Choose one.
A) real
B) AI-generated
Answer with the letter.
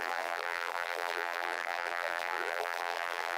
B